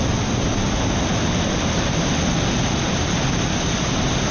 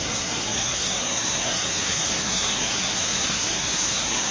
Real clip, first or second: first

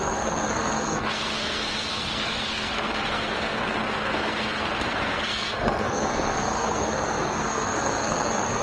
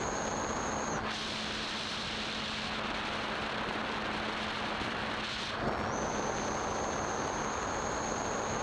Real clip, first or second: second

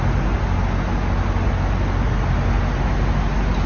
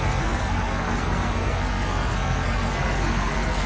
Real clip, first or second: first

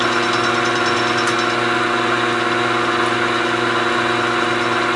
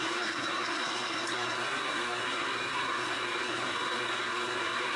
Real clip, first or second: first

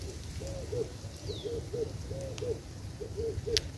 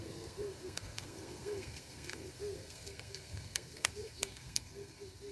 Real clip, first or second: first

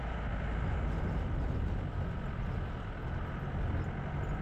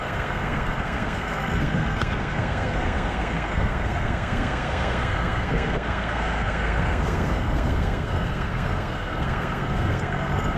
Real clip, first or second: first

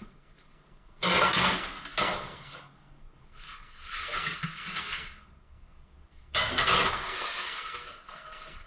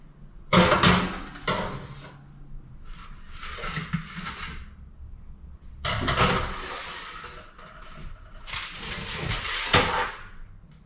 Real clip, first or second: second